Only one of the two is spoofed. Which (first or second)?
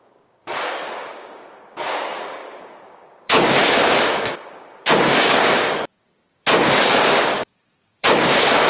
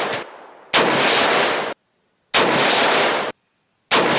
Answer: first